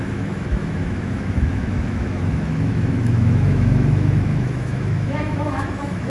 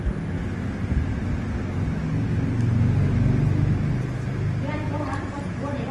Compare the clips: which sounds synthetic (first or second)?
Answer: first